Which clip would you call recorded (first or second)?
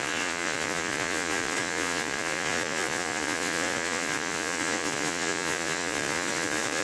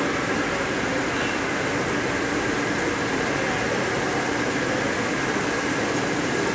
second